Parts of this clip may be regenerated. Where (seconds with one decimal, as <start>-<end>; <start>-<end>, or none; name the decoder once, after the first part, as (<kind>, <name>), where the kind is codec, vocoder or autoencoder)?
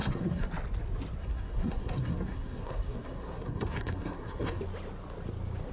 0.0-0.5 (codec, SNAC); 1.2-4.6